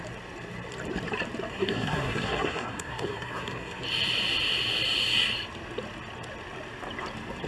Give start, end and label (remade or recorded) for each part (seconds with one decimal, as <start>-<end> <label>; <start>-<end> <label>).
0.0-1.5 recorded; 1.5-3.8 remade; 3.8-7.5 recorded

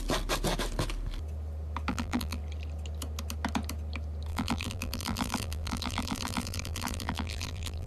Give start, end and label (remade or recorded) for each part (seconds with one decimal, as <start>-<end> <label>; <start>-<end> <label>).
0.0-1.9 recorded; 1.9-2.4 remade; 2.4-4.3 recorded; 4.3-7.9 remade

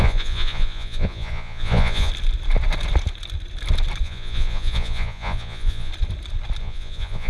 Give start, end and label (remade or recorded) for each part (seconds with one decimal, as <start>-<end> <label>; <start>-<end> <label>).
0.0-2.1 remade; 2.1-4.0 recorded; 4.0-5.9 remade; 5.9-6.6 recorded; 6.6-7.3 remade